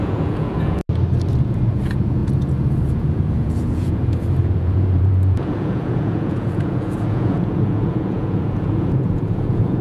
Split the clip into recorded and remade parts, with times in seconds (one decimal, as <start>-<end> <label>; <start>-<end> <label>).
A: 0.0-0.8 remade; 0.8-1.4 recorded; 1.4-9.8 remade